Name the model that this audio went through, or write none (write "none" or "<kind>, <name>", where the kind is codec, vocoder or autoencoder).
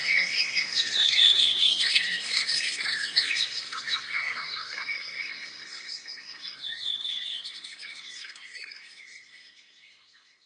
codec, SNAC